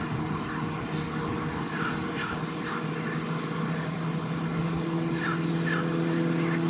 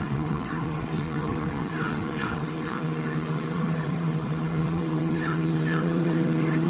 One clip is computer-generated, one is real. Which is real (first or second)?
first